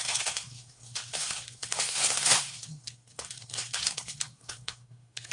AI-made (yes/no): yes